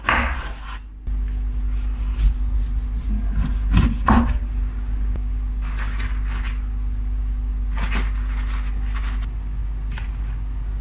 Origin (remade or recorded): recorded